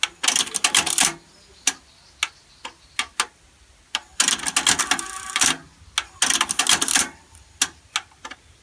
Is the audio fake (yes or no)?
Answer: no